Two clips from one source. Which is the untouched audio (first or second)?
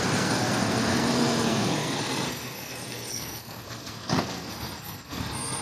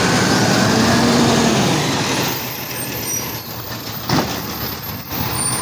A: second